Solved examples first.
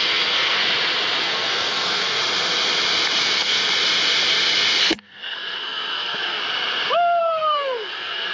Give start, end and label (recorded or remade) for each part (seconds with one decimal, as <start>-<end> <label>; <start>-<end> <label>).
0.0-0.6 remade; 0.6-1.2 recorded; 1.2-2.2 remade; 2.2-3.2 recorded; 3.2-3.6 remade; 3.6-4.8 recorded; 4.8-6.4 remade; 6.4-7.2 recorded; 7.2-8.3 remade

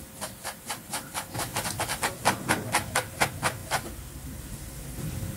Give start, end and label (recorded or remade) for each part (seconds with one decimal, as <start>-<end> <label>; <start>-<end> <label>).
0.0-5.4 recorded

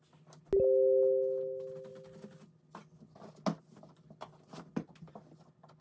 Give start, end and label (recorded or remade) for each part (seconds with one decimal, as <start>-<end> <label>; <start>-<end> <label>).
0.0-5.8 recorded

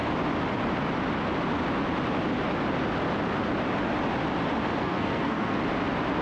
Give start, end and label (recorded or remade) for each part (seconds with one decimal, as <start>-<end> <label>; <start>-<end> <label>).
0.0-4.8 recorded; 4.8-5.6 remade; 5.6-6.2 recorded

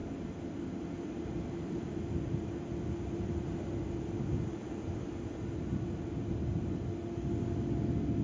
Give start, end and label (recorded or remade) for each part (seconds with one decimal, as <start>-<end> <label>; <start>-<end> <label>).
0.0-8.2 recorded

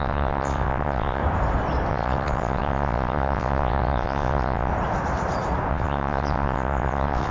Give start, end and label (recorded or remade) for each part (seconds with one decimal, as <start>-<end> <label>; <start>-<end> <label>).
0.0-1.2 remade; 1.2-1.9 recorded; 1.9-4.7 remade; 4.7-5.7 recorded; 5.7-7.3 remade